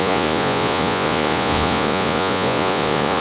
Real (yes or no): no